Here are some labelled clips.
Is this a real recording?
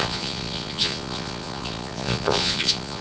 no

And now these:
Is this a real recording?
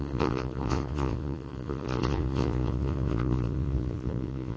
no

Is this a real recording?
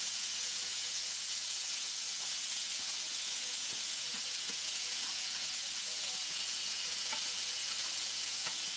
no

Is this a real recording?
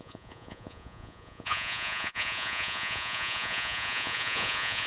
no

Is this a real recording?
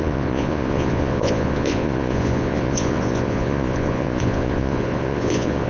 no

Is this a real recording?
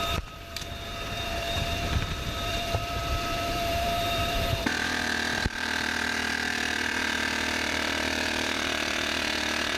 no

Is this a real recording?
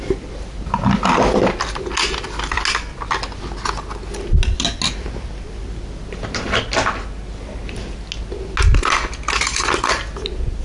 yes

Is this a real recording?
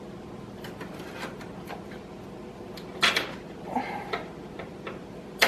no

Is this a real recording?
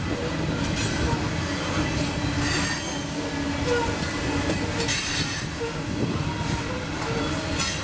yes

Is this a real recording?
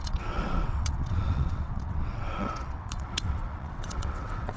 no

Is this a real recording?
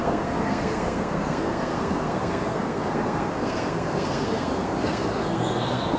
no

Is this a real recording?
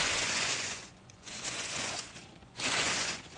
no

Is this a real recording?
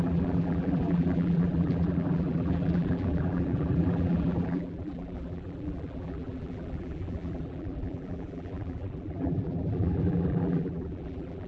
no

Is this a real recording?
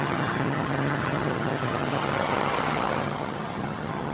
no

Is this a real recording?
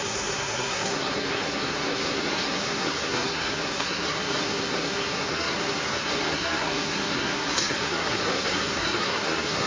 no